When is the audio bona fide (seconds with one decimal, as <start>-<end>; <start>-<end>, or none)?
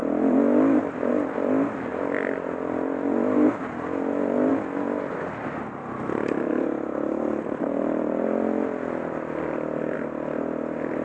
0.0-1.9; 3.6-11.0